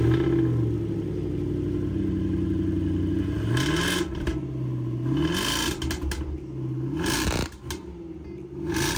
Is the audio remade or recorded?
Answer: recorded